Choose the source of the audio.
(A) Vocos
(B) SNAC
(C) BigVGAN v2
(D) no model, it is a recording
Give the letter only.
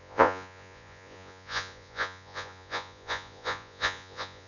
A